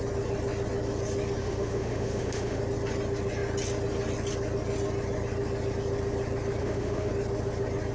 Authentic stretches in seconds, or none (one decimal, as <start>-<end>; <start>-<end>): 0.0-1.4; 2.6-6.6; 7.1-7.9